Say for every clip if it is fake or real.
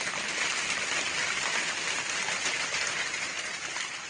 real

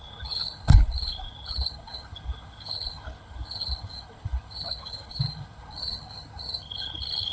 fake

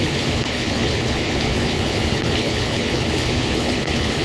fake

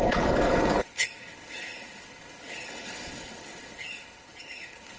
fake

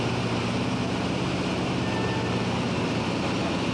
real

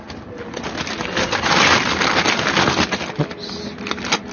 real